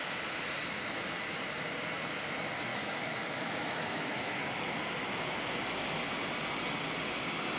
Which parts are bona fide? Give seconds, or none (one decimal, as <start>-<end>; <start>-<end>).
0.0-2.7; 4.5-7.6